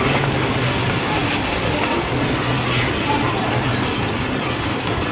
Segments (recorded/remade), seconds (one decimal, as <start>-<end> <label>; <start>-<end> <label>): 0.0-5.1 recorded